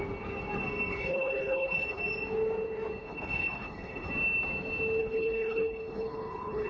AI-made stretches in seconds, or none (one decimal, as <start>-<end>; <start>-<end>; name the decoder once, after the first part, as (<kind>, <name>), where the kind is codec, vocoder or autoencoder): 0.9-2.0 (codec, HILCodec); 3.0-4.1; 5.0-6.7